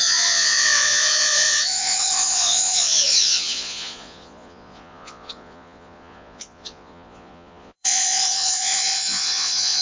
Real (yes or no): no